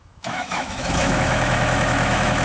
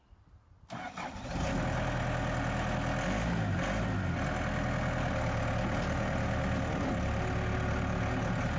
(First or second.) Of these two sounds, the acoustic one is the second